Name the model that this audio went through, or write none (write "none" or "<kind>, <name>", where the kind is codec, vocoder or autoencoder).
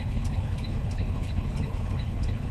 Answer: codec, HILCodec